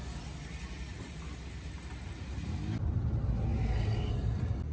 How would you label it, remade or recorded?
recorded